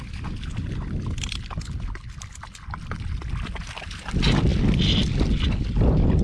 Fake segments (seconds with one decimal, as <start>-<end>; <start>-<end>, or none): none